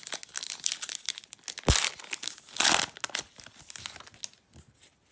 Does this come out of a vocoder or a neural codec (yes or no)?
no